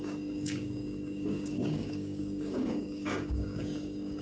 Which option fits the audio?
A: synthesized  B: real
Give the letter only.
A